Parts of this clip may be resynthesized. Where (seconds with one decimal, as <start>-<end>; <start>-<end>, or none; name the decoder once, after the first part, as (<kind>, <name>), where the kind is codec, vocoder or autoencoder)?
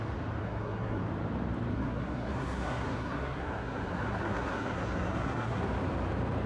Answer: 0.4-1.0 (codec, SNAC); 1.7-5.6